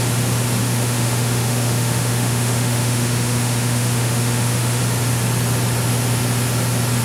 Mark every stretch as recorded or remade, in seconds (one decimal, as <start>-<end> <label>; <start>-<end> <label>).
0.0-0.6 recorded; 0.6-4.8 remade; 4.8-7.0 recorded